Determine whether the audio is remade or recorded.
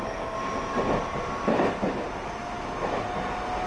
recorded